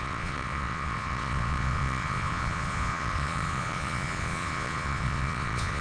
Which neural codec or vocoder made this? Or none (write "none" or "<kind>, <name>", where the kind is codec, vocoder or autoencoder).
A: vocoder, Vocos